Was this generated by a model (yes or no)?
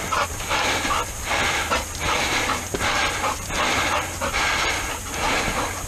no